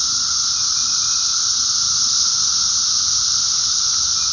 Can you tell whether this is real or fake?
real